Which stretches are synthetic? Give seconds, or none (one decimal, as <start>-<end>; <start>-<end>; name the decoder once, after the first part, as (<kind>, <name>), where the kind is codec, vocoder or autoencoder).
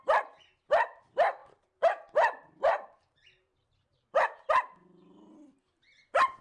1.4-4.5 (vocoder, BigVGAN v2)